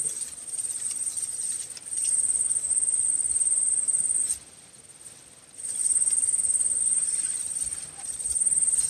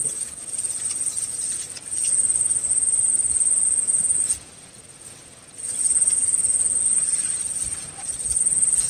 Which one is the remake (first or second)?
second